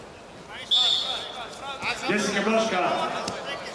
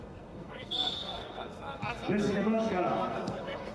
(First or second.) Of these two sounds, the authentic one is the first